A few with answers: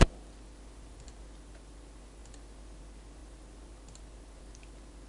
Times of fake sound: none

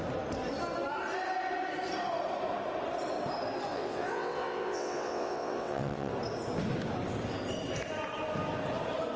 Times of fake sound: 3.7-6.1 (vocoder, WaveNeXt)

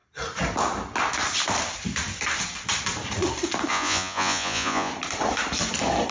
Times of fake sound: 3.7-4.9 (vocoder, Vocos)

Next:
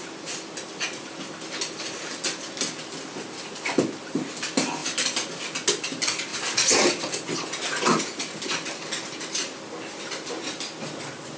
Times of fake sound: none

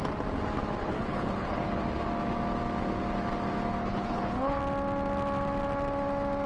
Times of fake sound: 0.8-1.7 (codec, HILCodec); 3.8-4.6